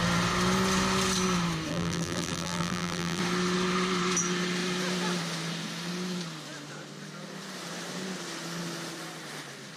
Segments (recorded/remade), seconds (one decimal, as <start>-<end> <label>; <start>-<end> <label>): 0.0-1.7 recorded; 1.7-3.2 remade; 3.2-9.8 recorded